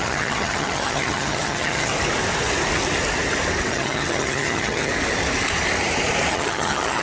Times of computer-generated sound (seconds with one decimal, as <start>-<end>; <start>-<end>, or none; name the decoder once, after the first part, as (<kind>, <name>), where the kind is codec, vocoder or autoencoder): 0.0-1.9 (vocoder, HiFi-GAN); 3.7-4.9; 6.3-7.0